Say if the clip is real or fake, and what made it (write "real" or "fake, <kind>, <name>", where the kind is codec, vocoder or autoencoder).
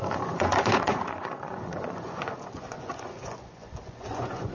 fake, vocoder, Vocos